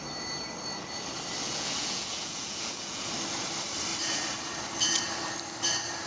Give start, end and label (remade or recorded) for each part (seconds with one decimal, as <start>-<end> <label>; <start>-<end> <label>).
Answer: 0.0-1.4 recorded; 1.4-3.1 remade; 3.1-6.1 recorded